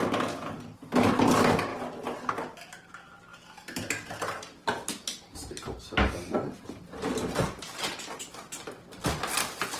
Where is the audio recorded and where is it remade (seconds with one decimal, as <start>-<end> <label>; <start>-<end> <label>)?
0.0-9.8 recorded